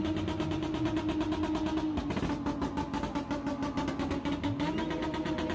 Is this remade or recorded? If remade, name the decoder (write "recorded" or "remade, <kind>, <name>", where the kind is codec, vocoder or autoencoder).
recorded